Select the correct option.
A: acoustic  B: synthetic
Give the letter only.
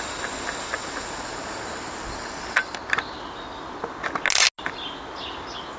A